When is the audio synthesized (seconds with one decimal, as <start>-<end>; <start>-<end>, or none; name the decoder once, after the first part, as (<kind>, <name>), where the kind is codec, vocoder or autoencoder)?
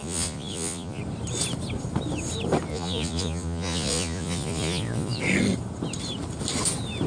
0.0-1.0 (vocoder, Vocos); 2.7-5.2